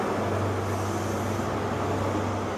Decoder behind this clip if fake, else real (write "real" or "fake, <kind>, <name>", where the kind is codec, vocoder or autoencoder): real